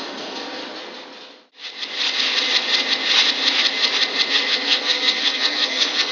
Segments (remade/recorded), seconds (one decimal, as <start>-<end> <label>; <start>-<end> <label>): 0.0-0.6 remade; 0.6-4.3 recorded; 4.3-6.1 remade